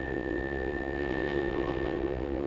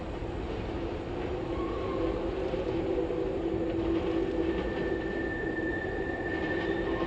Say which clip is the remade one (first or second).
first